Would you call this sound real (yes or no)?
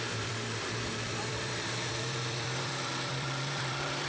no